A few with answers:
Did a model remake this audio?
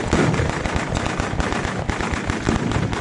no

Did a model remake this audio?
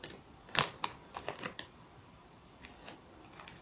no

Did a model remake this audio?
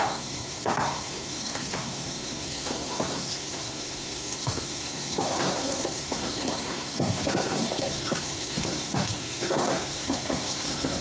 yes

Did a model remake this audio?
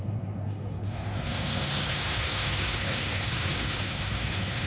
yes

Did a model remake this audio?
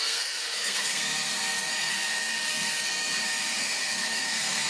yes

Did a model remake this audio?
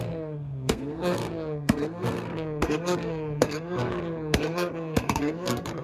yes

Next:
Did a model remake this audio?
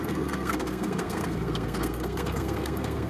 yes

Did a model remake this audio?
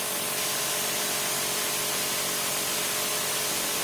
no